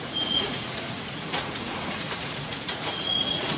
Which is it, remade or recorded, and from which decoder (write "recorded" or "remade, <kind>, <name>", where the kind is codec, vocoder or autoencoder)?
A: remade, vocoder, Vocos